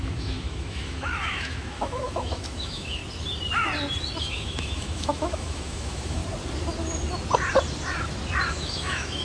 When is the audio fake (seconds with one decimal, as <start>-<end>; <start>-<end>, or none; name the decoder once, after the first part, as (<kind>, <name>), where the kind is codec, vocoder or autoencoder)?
0.0-3.0 (autoencoder, DAC-VAE); 4.2-6.2; 8.5-9.2